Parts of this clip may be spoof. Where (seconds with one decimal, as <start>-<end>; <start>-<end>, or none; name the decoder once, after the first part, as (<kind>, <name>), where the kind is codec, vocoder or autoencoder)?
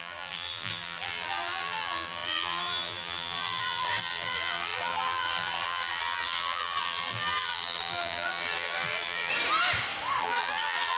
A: 0.0-9.3 (vocoder, BigVGAN v2); 10.2-11.0